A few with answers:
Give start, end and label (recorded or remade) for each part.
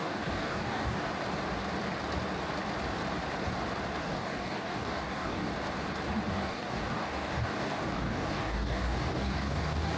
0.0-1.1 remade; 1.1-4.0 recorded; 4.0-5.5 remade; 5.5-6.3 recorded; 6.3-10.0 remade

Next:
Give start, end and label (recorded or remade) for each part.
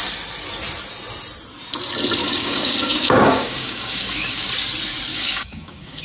0.0-2.2 recorded; 2.2-4.5 remade; 4.5-5.1 recorded; 5.1-6.0 remade